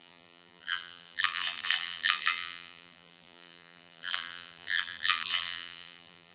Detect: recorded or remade remade